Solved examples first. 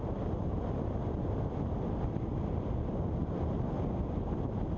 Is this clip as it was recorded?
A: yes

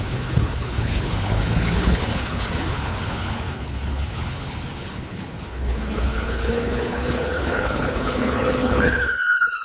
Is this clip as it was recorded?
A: no